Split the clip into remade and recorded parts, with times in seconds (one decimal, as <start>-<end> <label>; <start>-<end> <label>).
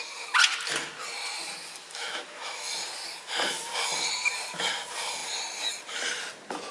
0.0-1.8 recorded; 1.8-2.7 remade; 2.7-6.7 recorded